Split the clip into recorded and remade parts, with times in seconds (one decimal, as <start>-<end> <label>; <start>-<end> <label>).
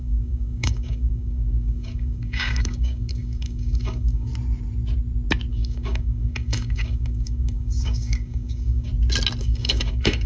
0.0-4.3 remade; 4.3-5.5 recorded; 5.5-8.9 remade; 8.9-9.4 recorded; 9.4-10.3 remade